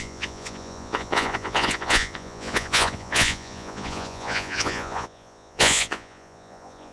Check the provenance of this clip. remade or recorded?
remade